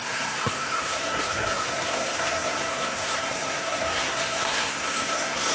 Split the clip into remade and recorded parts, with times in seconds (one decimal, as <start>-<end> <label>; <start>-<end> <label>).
0.0-5.5 remade